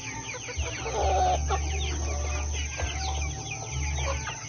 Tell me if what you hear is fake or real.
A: real